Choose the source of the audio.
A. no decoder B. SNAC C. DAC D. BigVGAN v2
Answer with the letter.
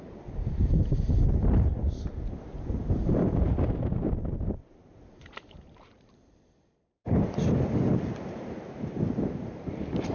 D